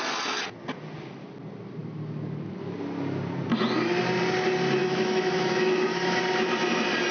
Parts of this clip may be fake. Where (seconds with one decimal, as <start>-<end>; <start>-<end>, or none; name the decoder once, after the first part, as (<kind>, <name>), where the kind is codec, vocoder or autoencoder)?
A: 4.8-6.2 (autoencoder, DAC-VAE)